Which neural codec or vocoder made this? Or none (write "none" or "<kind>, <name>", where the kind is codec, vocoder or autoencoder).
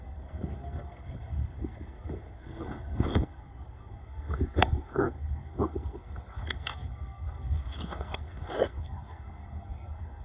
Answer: codec, SNAC